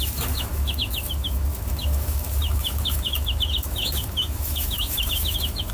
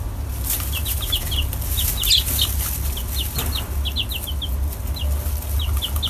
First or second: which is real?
second